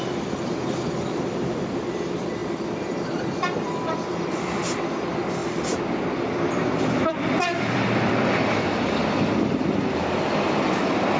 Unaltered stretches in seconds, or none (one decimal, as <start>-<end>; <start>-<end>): 5.4-6.9